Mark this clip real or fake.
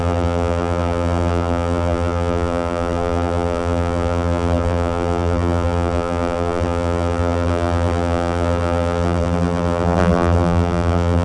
fake